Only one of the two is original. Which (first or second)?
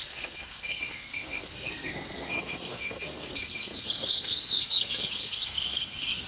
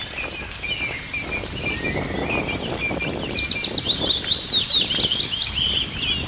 second